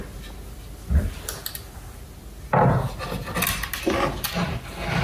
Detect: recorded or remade recorded